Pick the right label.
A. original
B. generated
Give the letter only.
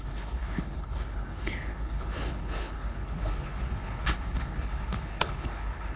B